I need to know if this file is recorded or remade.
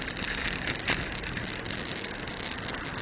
recorded